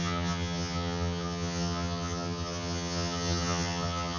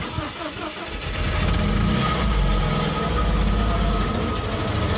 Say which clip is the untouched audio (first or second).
second